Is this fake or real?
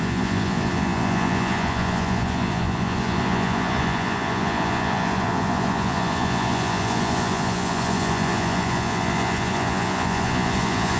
fake